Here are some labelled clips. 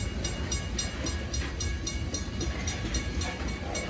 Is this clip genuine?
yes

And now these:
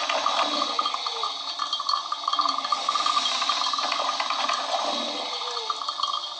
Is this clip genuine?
yes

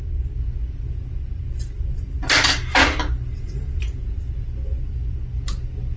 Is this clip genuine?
yes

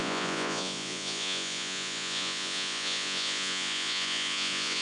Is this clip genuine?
no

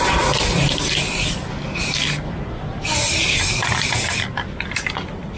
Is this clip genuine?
yes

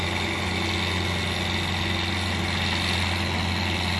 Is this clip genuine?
yes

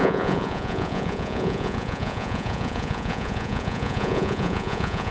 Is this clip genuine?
no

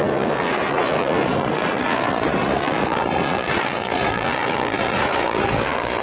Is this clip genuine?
no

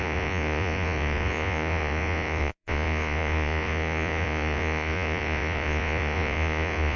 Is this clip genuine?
no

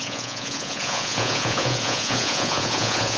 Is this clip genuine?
no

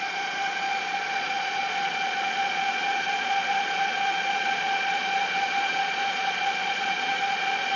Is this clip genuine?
no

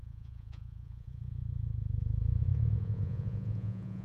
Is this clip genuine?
no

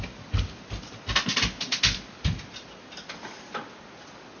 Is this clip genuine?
yes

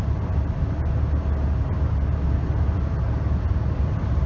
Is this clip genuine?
yes